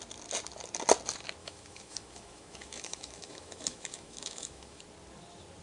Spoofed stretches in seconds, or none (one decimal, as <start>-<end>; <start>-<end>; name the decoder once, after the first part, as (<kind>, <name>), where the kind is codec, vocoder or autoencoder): 1.4-4.8 (autoencoder, DAC-VAE)